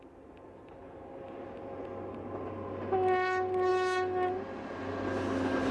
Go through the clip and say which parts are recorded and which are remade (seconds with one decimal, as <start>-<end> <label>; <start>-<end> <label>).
0.0-5.7 recorded